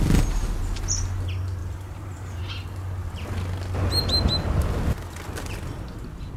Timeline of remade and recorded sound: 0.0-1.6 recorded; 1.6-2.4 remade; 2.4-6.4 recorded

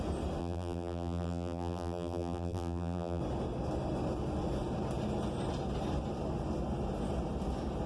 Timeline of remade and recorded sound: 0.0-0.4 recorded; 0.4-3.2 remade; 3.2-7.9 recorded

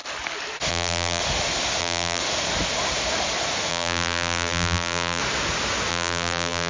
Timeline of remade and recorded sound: 0.0-0.7 recorded; 0.7-1.2 remade; 1.2-1.8 recorded; 1.8-2.2 remade; 2.2-3.7 recorded; 3.7-5.2 remade; 5.2-5.9 recorded; 5.9-6.7 remade

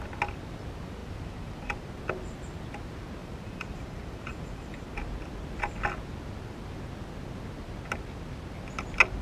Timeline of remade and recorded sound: 0.0-1.0 recorded; 1.0-1.9 remade; 1.9-3.2 recorded; 3.2-5.1 remade; 5.1-9.2 recorded

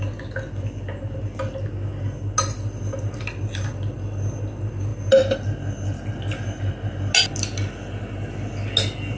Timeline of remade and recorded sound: 0.0-9.2 recorded